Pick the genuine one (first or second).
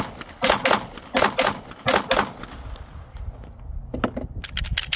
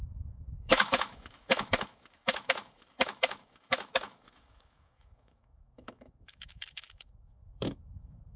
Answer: first